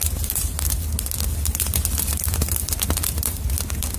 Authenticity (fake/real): fake